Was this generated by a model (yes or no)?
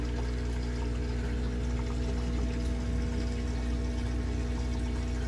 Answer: no